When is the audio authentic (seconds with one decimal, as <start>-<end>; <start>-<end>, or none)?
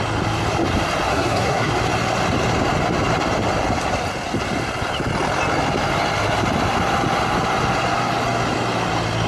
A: 0.0-1.1; 1.7-9.3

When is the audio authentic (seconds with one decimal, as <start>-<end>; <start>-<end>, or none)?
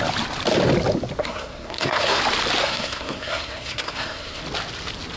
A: 0.0-1.2; 2.2-2.6; 4.4-5.2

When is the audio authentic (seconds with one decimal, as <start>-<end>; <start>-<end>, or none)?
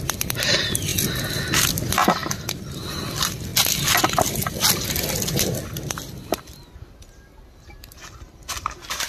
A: 0.0-9.1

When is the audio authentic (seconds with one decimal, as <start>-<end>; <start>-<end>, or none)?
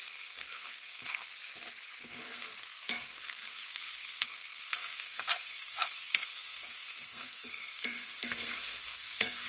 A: 1.3-2.0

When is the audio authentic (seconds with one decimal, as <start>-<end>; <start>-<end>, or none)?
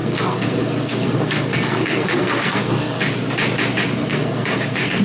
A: 3.0-4.0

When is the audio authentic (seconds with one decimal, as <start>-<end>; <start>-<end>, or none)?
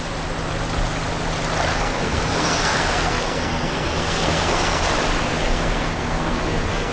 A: 0.0-1.7; 4.9-5.4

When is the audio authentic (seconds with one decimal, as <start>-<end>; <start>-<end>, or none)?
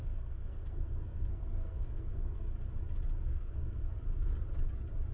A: 2.4-3.3; 3.8-5.1